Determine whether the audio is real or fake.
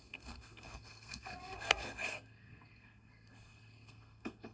fake